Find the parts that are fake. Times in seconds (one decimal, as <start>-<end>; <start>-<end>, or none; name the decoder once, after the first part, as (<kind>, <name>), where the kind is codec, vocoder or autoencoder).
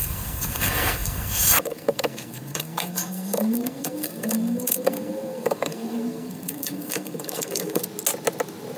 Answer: 0.0-7.8 (codec, SNAC)